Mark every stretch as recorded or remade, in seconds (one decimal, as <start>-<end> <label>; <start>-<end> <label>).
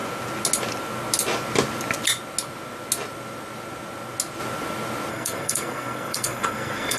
0.0-5.1 recorded; 5.1-7.0 remade